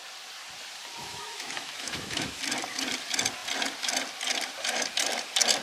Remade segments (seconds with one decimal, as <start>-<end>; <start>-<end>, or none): 1.0-2.4